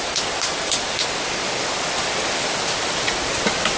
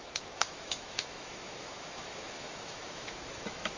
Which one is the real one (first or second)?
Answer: first